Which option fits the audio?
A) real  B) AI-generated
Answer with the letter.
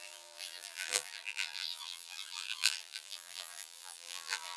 B